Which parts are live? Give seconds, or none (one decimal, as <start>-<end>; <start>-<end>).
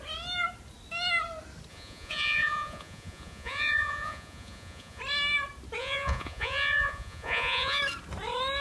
0.0-1.7; 5.0-5.8; 7.8-8.6